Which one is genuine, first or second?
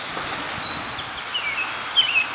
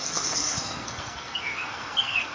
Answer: first